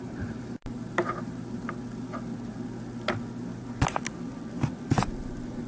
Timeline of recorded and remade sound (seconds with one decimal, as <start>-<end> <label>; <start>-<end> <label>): 0.0-1.6 remade; 1.6-5.0 recorded; 5.0-5.7 remade